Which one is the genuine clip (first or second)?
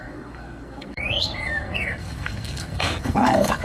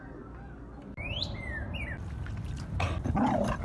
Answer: second